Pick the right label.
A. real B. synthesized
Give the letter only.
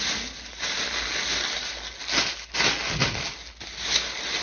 A